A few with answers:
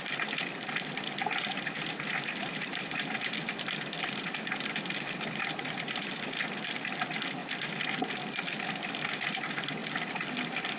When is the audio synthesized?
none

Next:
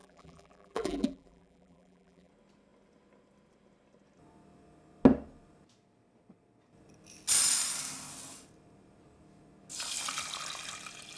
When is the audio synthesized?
0.0-2.3

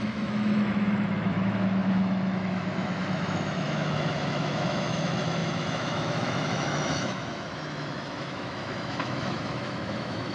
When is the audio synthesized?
0.0-10.3

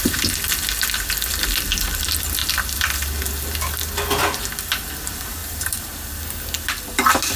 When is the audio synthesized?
5.4-6.2